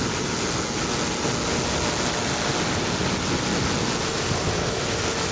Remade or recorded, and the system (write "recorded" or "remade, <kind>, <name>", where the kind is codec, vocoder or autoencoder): recorded